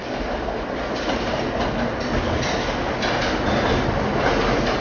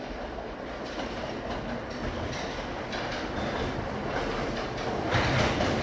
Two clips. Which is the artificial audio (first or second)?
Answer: second